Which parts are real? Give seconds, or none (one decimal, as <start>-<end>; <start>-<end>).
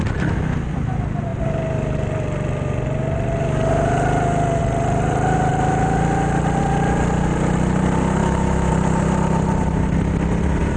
0.0-8.2; 8.7-10.8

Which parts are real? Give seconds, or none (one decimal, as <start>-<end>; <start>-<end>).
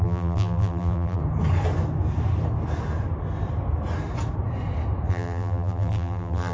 1.2-5.1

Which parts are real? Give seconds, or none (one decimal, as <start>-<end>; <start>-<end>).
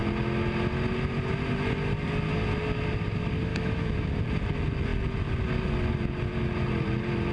0.0-3.5; 4.1-7.3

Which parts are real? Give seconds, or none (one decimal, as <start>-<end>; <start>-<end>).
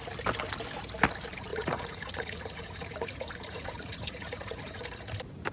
0.0-1.5; 4.8-5.5